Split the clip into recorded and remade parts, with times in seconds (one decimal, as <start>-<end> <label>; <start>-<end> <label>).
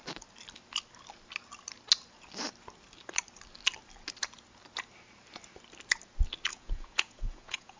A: 0.0-6.5 recorded; 6.5-7.8 remade